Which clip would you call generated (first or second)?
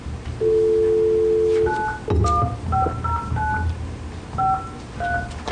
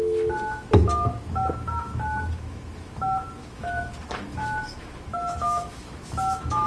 second